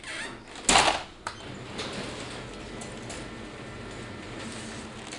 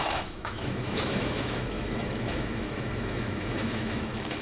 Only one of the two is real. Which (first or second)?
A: first